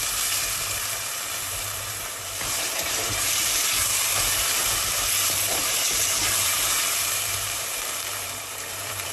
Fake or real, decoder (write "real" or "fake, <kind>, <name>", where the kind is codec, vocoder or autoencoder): fake, vocoder, BigVGAN v2